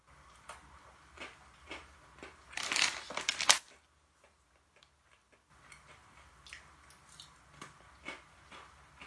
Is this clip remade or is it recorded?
recorded